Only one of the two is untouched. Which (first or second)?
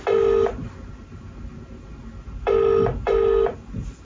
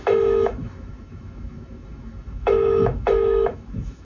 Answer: first